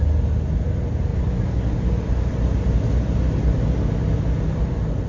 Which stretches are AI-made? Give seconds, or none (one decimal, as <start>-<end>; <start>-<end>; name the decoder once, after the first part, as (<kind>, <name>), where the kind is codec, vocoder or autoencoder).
none